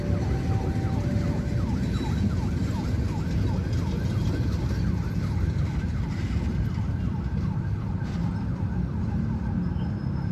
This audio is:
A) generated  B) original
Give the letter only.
B